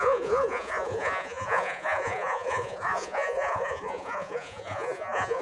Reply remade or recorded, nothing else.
remade